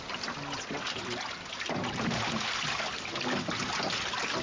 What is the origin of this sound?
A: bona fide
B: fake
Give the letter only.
A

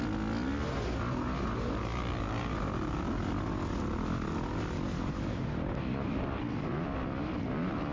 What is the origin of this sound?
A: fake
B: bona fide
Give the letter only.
B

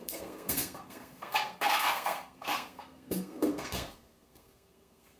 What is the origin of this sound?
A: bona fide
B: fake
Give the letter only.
B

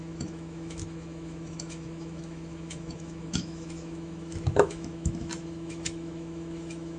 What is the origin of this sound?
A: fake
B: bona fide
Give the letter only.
A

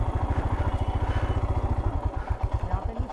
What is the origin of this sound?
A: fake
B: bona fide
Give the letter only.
B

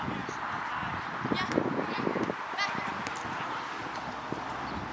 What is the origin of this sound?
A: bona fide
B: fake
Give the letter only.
B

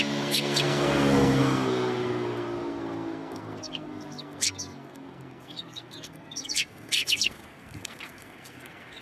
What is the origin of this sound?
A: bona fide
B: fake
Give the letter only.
B